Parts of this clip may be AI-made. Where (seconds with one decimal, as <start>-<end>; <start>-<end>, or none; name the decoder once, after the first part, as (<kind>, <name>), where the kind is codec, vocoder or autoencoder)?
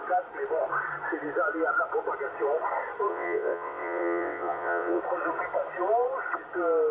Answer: 3.1-5.0 (vocoder, WaveNeXt)